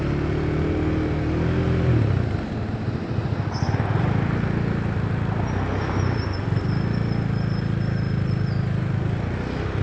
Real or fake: real